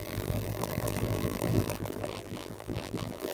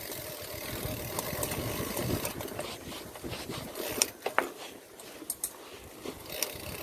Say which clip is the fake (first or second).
first